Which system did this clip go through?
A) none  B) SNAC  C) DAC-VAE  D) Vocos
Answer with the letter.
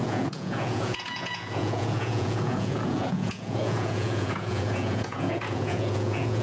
D